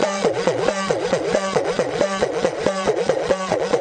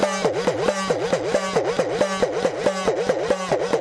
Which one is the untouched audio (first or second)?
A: second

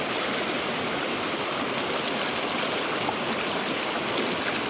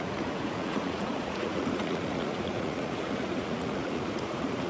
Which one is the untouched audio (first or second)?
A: first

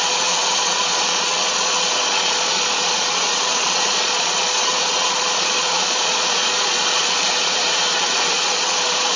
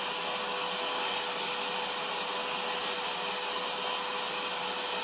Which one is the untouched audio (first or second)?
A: second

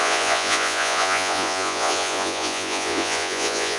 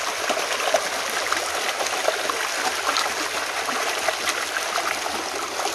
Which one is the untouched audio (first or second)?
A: second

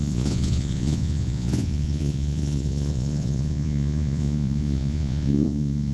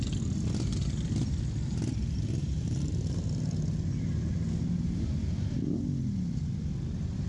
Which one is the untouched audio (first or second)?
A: second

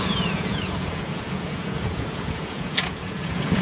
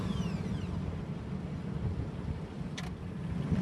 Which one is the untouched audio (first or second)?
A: second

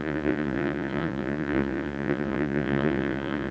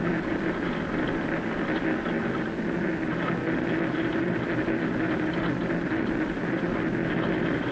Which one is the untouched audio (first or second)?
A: second